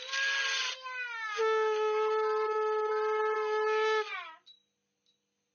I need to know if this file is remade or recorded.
recorded